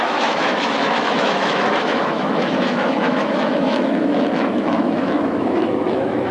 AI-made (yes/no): yes